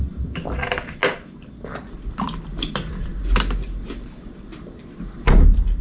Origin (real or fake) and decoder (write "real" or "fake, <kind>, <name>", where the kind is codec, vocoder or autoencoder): real